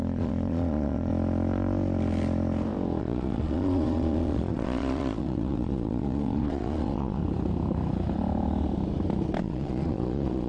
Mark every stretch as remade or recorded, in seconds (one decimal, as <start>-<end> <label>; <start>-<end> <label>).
0.0-1.1 remade; 1.1-3.0 recorded; 3.0-7.2 remade; 7.2-9.4 recorded; 9.4-10.5 remade